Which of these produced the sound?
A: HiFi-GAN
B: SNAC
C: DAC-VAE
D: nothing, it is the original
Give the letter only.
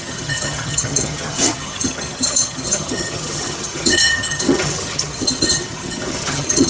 A